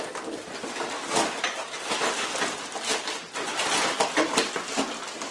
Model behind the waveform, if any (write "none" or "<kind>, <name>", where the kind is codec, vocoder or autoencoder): none